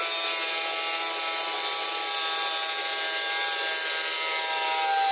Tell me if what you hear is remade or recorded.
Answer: recorded